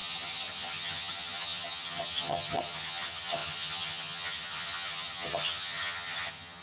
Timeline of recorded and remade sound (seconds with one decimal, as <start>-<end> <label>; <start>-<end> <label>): 0.0-6.6 remade